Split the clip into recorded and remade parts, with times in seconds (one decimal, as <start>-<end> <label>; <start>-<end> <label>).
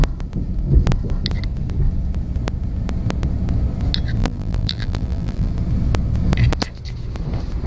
0.0-4.2 recorded; 4.2-5.5 remade; 5.5-7.7 recorded